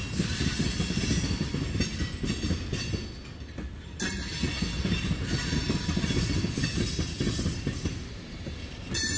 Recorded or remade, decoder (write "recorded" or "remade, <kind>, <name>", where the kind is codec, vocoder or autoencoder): recorded